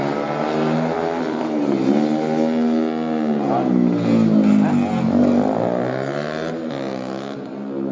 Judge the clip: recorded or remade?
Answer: recorded